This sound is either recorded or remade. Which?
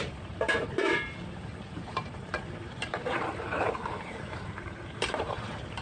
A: remade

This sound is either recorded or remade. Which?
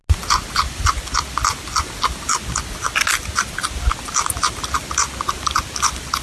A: recorded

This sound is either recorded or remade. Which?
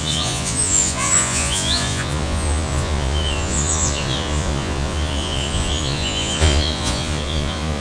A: remade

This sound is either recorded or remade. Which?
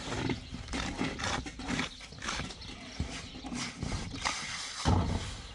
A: recorded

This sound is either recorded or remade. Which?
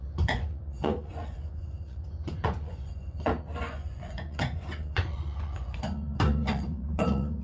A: remade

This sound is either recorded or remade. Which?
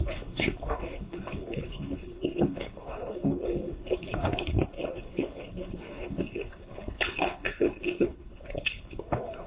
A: remade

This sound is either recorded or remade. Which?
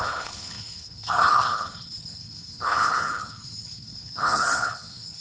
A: remade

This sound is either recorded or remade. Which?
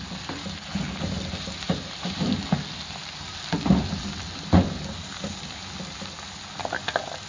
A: recorded